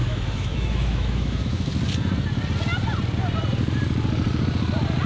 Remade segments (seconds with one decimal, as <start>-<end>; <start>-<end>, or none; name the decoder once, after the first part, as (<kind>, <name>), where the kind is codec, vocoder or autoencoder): 0.0-1.7 (autoencoder, DAC-VAE)

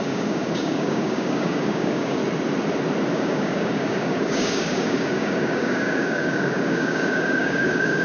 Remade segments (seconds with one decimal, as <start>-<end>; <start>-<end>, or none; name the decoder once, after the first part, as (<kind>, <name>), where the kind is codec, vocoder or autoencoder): 0.0-2.2 (codec, DAC); 3.1-8.0

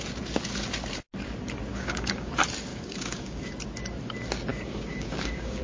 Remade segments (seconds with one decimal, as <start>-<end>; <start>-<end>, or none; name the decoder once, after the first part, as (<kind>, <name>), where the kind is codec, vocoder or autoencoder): 1.7-2.3 (codec, DAC); 2.7-3.5; 4.5-5.6

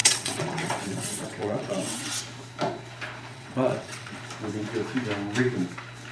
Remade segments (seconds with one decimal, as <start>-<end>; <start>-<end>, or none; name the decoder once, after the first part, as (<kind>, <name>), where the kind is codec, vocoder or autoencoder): 0.0-2.2 (vocoder, WaveNeXt); 3.3-4.2

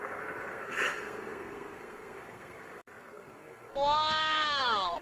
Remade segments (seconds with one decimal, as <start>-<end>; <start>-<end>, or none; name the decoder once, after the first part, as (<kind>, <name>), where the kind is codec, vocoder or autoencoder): 0.0-5.0 (codec, SNAC)